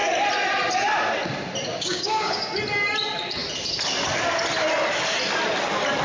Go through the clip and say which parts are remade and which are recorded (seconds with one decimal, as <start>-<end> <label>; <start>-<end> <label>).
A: 0.0-1.7 recorded; 1.7-2.4 remade; 2.4-6.0 recorded